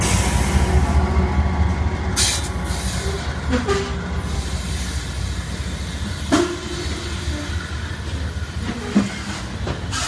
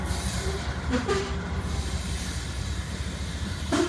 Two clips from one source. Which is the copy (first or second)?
second